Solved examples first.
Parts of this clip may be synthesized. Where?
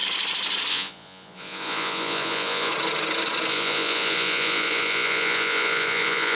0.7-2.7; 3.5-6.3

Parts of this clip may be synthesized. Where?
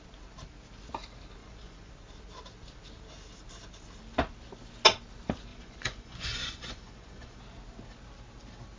1.4-1.9; 5.5-7.4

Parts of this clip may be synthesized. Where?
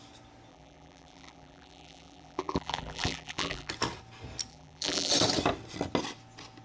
0.5-3.7; 4.5-5.1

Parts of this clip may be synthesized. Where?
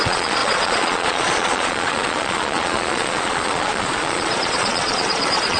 0.0-5.6